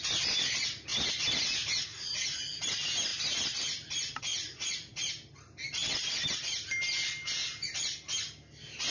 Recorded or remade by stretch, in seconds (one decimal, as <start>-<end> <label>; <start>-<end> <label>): 0.0-1.9 recorded; 1.9-2.6 remade; 2.6-4.3 recorded; 4.3-5.1 remade; 5.1-8.9 recorded